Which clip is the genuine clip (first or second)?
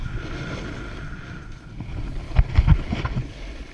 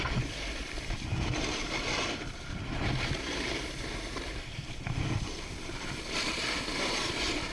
first